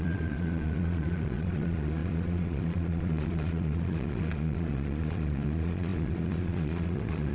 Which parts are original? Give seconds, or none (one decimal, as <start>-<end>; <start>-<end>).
none